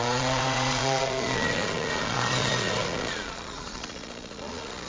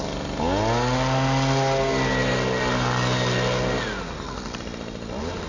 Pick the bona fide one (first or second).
second